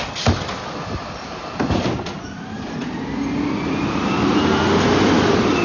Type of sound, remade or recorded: recorded